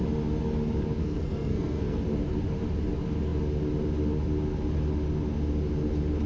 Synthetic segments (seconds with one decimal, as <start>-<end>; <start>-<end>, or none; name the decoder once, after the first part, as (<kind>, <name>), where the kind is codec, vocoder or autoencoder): 1.0-2.0 (codec, SNAC)